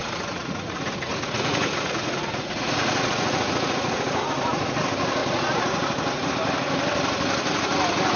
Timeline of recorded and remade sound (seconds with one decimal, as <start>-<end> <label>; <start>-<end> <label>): 0.0-4.8 remade; 4.8-5.2 recorded; 5.2-6.3 remade; 6.3-8.2 recorded